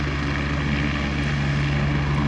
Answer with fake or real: real